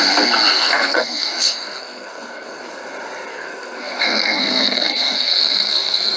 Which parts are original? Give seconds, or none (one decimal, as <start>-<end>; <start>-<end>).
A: 0.0-0.5; 2.7-3.3